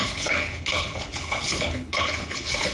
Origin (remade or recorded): remade